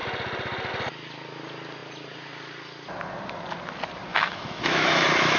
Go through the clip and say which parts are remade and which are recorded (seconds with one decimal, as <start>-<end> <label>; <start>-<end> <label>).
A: 0.0-4.1 recorded; 4.1-5.4 remade